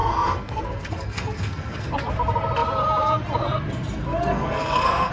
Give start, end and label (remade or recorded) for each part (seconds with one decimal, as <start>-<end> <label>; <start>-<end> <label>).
0.0-1.9 remade; 1.9-4.3 recorded; 4.3-5.1 remade

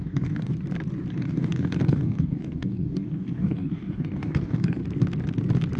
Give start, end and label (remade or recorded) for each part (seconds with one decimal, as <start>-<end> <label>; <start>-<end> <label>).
0.0-0.5 remade; 0.5-1.1 recorded; 1.1-4.8 remade; 4.8-5.8 recorded

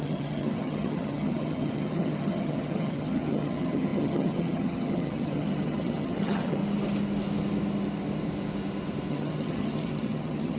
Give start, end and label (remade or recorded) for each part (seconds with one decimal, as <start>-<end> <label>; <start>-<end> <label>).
0.0-6.6 remade; 6.6-9.1 recorded; 9.1-10.6 remade

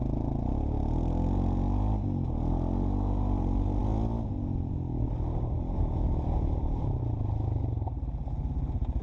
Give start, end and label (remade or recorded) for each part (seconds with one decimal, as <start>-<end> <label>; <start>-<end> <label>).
0.0-9.0 recorded

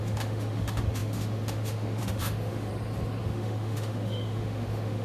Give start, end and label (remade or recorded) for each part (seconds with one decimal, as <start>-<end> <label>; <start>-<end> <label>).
0.0-2.7 remade; 2.7-3.2 recorded; 3.2-5.0 remade

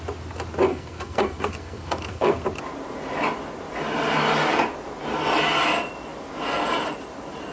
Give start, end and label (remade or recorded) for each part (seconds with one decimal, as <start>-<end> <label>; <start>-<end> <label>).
0.0-0.7 recorded; 0.7-2.4 remade; 2.4-7.5 recorded